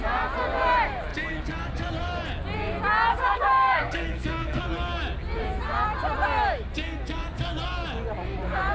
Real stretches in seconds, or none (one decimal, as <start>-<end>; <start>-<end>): 0.0-3.1; 4.6-8.7